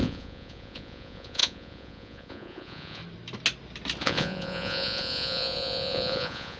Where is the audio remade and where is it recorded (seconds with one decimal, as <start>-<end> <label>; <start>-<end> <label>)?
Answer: 0.0-3.0 remade; 3.0-4.0 recorded; 4.0-6.6 remade